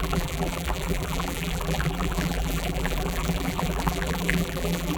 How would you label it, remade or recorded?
remade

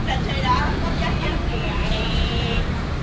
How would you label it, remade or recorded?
remade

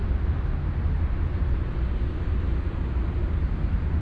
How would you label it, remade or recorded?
recorded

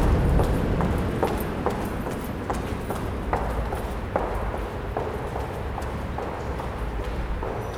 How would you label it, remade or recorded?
recorded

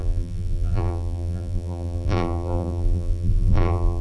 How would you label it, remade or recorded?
remade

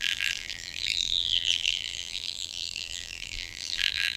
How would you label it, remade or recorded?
remade